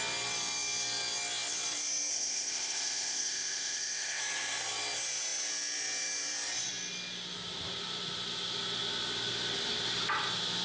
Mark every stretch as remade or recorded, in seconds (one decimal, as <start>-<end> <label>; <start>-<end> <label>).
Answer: 0.0-2.1 recorded; 2.1-4.2 remade; 4.2-10.6 recorded